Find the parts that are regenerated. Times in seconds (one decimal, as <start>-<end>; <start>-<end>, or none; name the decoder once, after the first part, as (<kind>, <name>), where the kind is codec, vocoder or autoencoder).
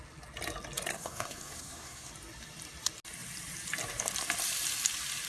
0.9-2.1 (codec, SNAC)